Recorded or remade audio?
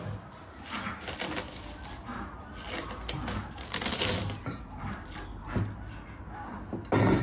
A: recorded